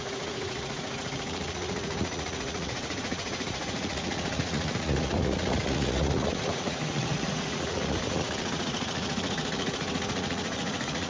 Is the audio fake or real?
fake